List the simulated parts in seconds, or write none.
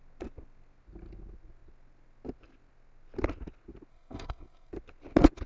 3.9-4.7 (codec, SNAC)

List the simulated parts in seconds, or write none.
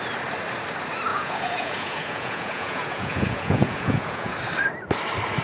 1.1-4.3 (vocoder, Vocos)